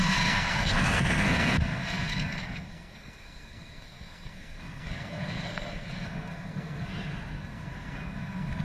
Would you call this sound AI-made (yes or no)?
yes